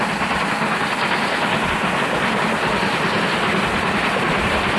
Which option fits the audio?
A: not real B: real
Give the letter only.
B